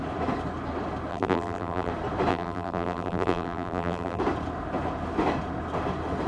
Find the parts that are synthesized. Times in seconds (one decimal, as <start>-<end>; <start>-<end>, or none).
1.1-1.9; 2.3-4.2